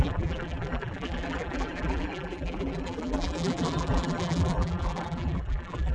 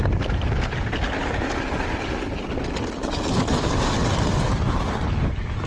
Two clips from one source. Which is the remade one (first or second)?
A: first